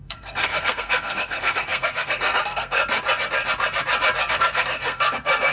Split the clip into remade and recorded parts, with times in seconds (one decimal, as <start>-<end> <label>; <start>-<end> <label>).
0.0-2.8 remade; 2.8-4.3 recorded; 4.3-5.5 remade